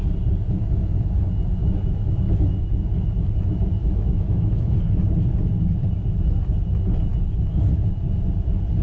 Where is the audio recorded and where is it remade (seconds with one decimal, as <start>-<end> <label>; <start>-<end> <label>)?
0.0-1.6 recorded; 1.6-2.7 remade; 2.7-3.8 recorded; 3.8-4.8 remade; 4.8-8.8 recorded